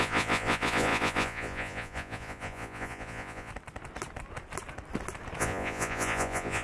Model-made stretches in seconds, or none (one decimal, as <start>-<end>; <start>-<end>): 0.0-3.5; 5.4-6.6